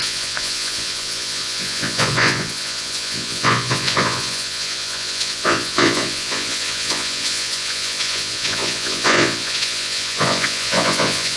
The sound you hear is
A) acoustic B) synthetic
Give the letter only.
B